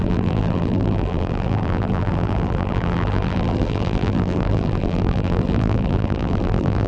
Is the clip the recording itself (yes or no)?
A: no